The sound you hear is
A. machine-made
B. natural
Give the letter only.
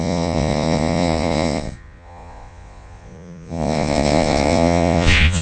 A